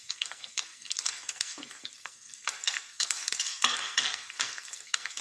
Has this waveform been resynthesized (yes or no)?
yes